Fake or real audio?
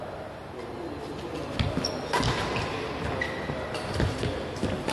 real